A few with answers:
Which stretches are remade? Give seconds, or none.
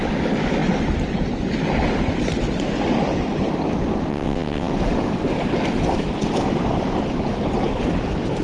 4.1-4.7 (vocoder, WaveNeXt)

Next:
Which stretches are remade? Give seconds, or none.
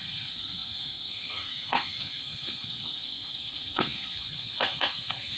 0.0-5.4 (codec, SNAC)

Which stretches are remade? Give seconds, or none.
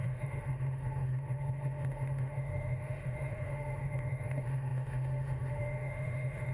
0.0-6.5 (autoencoder, DAC-VAE)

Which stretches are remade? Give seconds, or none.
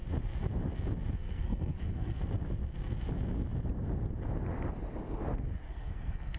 1.1-2.2 (codec, SNAC); 5.7-6.4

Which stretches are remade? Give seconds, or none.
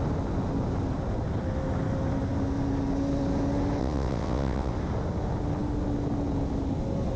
3.8-4.7 (vocoder, WaveNeXt)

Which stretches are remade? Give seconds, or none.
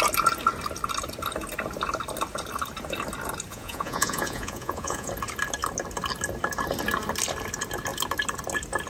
3.5-5.1 (vocoder, Vocos)